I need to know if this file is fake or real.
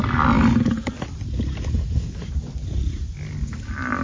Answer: real